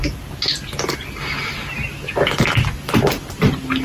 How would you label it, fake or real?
real